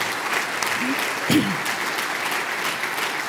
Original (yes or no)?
yes